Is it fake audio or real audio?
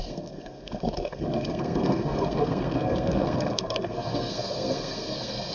fake